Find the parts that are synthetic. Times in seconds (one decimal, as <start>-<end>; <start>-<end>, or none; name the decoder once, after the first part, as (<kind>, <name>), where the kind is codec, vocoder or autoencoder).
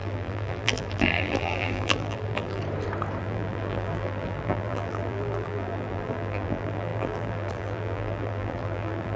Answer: 0.0-2.6 (vocoder, BigVGAN v2); 3.2-9.2